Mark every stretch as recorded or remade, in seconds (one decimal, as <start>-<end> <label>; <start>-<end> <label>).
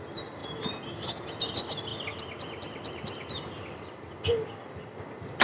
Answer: 0.0-5.4 recorded